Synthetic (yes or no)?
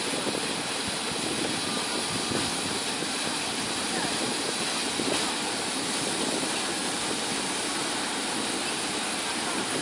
no